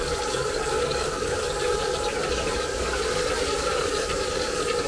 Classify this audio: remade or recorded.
remade